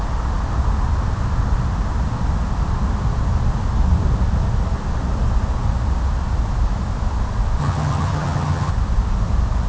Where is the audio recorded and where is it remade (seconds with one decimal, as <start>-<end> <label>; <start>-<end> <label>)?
0.0-7.6 recorded; 7.6-8.7 remade; 8.7-9.7 recorded